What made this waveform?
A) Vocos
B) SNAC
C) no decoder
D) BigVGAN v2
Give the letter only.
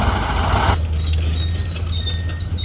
C